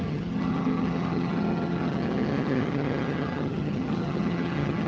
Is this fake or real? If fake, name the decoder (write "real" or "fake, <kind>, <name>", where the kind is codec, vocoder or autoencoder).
fake, vocoder, HiFi-GAN